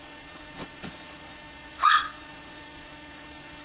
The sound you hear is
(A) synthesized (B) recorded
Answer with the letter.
A